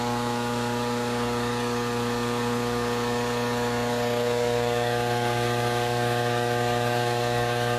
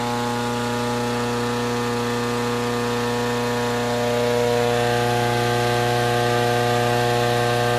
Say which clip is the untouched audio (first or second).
second